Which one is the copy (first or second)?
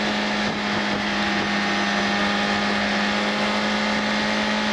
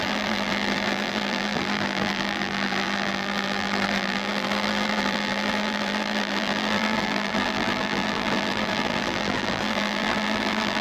second